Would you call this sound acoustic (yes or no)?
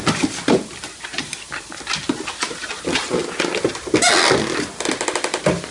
yes